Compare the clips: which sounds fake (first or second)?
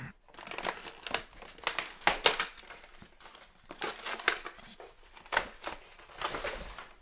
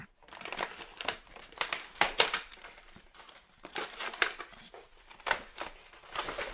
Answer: second